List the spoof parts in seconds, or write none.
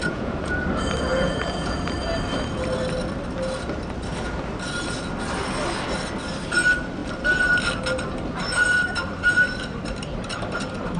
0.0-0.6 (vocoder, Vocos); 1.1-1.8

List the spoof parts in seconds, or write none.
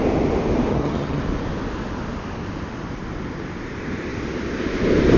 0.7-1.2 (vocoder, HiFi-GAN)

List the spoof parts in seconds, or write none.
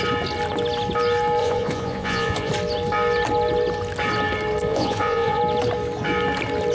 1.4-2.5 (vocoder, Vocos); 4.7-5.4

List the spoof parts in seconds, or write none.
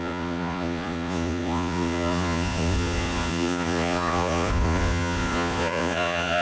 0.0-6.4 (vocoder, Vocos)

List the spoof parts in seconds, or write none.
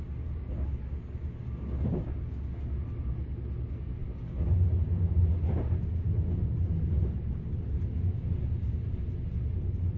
none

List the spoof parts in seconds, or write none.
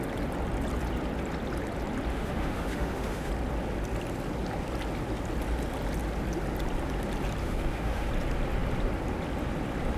2.1-3.3 (autoencoder, DAC-VAE); 7.4-8.1